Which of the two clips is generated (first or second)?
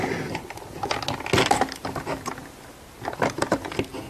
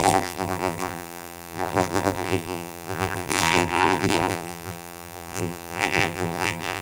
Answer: second